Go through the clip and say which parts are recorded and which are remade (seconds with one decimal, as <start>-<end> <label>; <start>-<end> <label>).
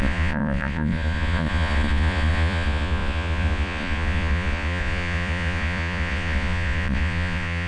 0.0-7.7 remade